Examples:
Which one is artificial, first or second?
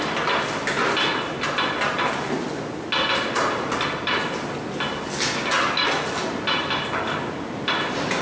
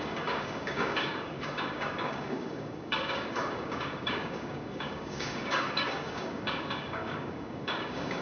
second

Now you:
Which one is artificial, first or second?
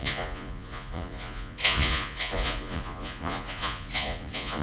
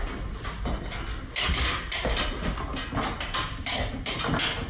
first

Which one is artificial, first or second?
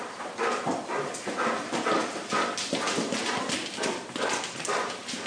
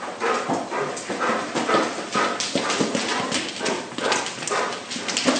first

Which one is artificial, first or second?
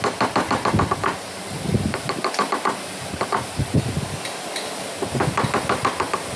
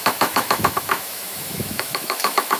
second